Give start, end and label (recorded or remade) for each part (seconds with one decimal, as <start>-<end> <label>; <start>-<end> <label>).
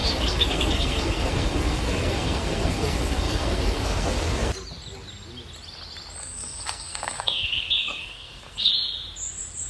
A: 0.0-4.5 remade; 4.5-6.2 recorded; 6.2-8.7 remade; 8.7-9.7 recorded